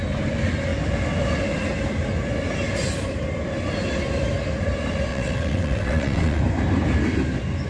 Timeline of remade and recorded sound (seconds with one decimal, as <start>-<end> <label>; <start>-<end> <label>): 0.0-5.1 recorded; 5.1-6.4 remade; 6.4-7.7 recorded